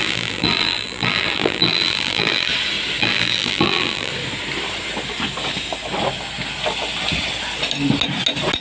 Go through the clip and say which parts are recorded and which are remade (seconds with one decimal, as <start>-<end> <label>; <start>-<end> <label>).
0.0-2.5 remade; 2.5-3.0 recorded; 3.0-4.1 remade; 4.1-8.6 recorded